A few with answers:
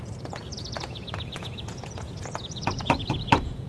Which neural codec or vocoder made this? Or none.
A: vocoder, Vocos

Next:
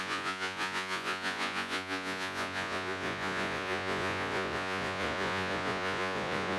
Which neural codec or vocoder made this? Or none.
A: vocoder, Vocos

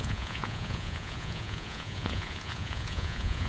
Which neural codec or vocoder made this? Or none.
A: vocoder, Vocos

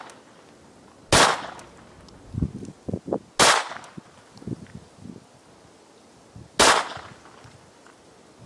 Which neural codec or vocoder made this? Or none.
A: none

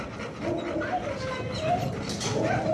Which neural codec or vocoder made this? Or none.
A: none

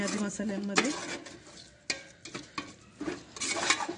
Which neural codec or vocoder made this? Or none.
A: none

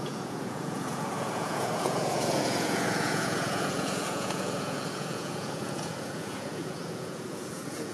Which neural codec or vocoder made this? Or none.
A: vocoder, Vocos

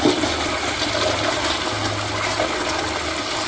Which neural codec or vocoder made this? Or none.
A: none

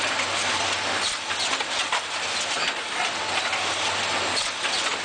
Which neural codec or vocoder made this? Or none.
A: none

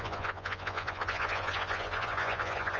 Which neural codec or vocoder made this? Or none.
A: vocoder, Vocos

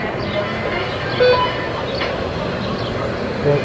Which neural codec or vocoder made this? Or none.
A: none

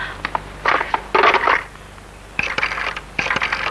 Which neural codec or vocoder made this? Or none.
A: none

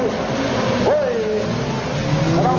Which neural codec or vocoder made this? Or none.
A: none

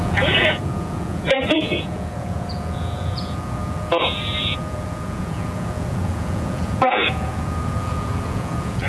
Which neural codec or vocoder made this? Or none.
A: vocoder, Vocos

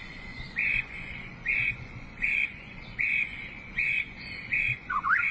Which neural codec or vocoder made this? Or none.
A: vocoder, Vocos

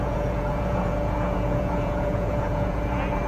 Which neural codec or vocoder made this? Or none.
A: vocoder, Vocos